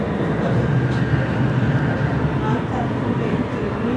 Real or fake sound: real